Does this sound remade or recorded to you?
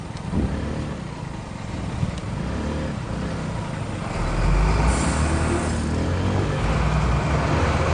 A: recorded